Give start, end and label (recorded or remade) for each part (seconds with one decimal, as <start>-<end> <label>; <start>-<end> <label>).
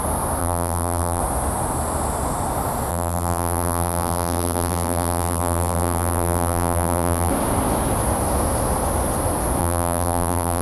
0.0-0.4 recorded; 0.4-1.2 remade; 1.2-2.9 recorded; 2.9-7.3 remade; 7.3-9.6 recorded; 9.6-10.6 remade